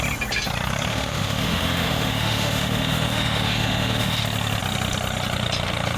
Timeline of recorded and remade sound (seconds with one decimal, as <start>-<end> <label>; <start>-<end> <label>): 0.0-0.9 recorded; 0.9-4.2 remade; 4.2-6.0 recorded